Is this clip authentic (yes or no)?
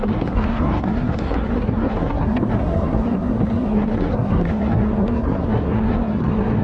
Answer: no